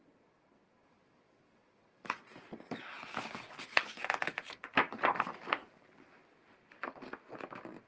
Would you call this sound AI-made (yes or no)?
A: no